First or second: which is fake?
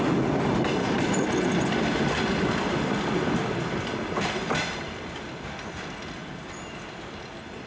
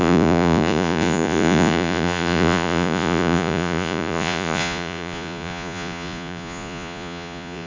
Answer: second